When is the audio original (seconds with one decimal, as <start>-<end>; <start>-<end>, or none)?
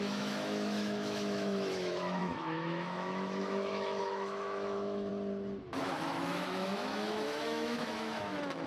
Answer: 5.1-5.8